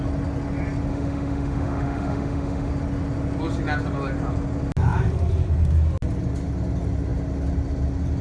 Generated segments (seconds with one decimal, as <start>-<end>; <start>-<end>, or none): 0.9-2.7